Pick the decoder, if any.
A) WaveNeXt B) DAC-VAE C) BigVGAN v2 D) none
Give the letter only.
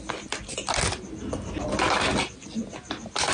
D